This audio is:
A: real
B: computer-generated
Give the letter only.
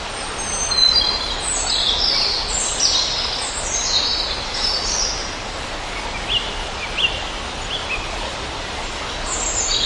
A